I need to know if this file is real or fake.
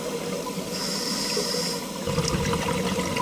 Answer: real